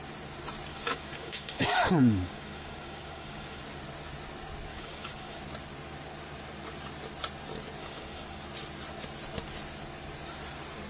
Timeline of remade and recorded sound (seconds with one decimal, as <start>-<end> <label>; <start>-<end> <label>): 0.0-0.7 recorded; 0.7-3.6 remade; 3.6-4.7 recorded; 4.7-5.4 remade; 5.4-7.8 recorded; 7.8-8.4 remade; 8.4-10.9 recorded